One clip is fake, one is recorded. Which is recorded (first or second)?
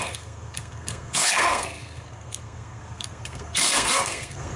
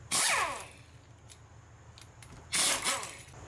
second